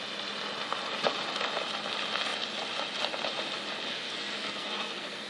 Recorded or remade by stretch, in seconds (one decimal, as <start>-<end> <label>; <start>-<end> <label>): 0.0-3.9 recorded; 3.9-5.3 remade